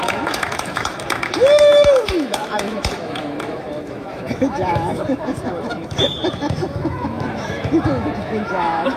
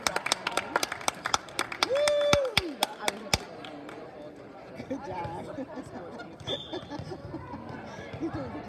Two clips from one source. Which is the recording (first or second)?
second